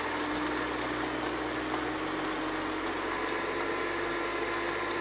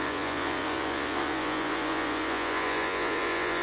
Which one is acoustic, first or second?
first